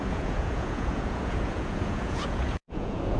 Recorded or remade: remade